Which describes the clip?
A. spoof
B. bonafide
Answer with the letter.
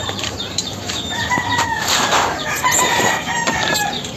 A